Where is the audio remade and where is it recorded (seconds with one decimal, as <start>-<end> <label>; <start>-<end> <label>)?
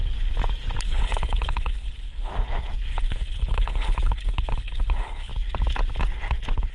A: 0.0-0.8 recorded; 0.8-2.3 remade; 2.3-2.9 recorded; 2.9-5.3 remade; 5.3-6.7 recorded